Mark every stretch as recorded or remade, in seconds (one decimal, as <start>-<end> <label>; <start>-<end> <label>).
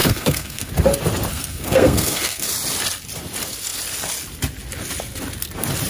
0.0-0.7 remade; 0.7-1.3 recorded; 1.3-2.5 remade; 2.5-5.9 recorded